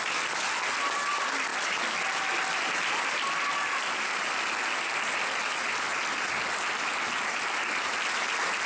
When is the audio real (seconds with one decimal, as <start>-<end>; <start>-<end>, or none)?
0.0-8.7